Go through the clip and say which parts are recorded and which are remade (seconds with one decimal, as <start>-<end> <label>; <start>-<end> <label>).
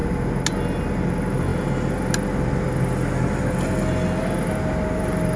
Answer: 0.0-5.4 recorded